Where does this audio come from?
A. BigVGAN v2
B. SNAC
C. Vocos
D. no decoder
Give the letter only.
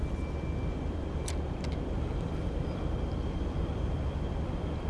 D